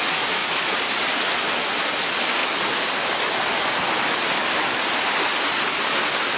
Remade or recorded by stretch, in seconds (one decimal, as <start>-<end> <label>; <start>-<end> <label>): 0.0-0.4 recorded; 0.4-1.2 remade; 1.2-6.4 recorded